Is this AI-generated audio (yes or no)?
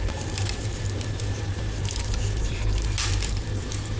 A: yes